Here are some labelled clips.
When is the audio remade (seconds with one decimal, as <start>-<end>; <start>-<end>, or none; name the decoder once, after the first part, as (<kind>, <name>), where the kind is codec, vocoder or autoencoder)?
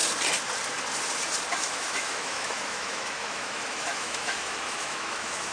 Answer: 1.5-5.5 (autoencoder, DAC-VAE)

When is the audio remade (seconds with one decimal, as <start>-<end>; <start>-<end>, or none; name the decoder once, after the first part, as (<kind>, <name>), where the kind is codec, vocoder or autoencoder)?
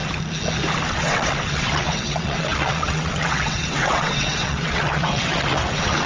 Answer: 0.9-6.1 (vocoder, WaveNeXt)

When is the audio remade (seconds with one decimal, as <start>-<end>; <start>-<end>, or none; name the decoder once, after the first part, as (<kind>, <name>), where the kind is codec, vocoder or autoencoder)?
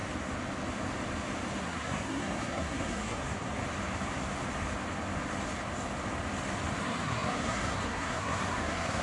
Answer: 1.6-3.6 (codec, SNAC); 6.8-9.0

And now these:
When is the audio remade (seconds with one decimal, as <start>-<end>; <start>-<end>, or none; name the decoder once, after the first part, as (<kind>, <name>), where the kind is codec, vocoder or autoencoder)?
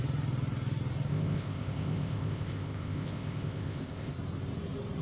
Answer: 1.1-4.1 (codec, ZipCodec)